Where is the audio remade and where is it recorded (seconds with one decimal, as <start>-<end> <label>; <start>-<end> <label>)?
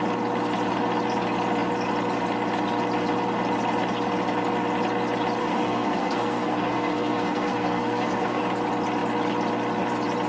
0.0-5.4 recorded; 5.4-8.4 remade; 8.4-10.3 recorded